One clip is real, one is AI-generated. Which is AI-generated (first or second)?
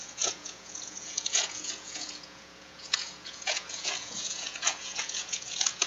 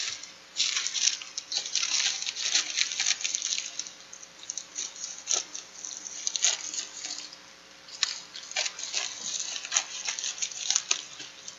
first